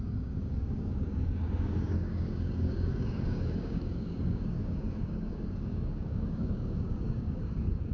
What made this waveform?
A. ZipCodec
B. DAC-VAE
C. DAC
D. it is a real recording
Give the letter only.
C